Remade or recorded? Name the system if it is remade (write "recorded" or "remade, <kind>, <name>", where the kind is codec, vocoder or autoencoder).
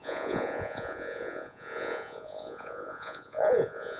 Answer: remade, vocoder, Vocos